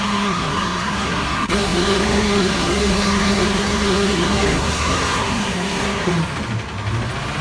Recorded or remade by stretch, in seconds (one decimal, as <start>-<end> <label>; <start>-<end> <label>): 0.0-6.1 remade; 6.1-7.4 recorded